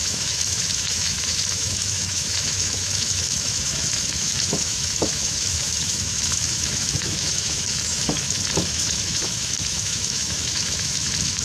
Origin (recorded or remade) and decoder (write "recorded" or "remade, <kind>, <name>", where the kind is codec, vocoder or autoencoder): remade, autoencoder, DAC-VAE